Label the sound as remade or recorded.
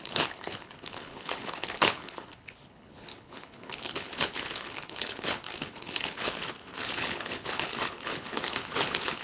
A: remade